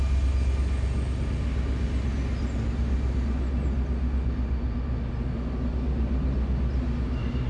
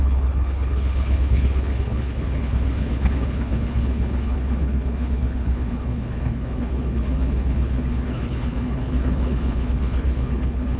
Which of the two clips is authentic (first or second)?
first